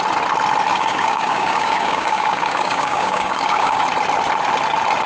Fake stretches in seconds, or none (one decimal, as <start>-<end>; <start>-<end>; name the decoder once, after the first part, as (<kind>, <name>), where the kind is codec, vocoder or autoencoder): 0.7-3.8 (codec, DAC)